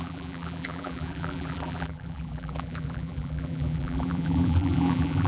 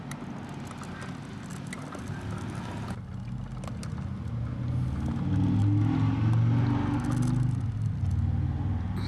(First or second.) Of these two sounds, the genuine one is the second